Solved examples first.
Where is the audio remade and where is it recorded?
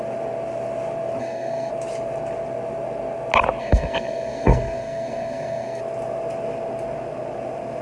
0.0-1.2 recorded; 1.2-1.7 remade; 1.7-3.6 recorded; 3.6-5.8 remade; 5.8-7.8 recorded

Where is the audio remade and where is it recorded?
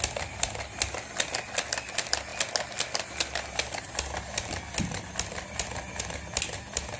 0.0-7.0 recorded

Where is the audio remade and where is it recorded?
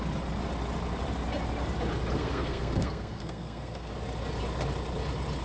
0.0-2.2 recorded; 2.2-3.9 remade; 3.9-5.4 recorded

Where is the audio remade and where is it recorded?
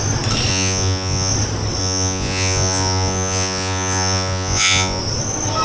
0.0-0.5 recorded; 0.5-1.3 remade; 1.3-1.8 recorded; 1.8-5.0 remade; 5.0-5.6 recorded